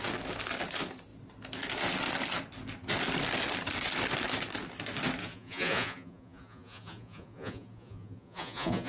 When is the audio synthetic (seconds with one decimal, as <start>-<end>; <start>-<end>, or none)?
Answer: 5.2-8.9